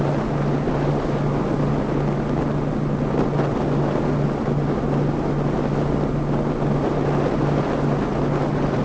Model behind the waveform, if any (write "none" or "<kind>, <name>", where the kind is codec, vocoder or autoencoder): none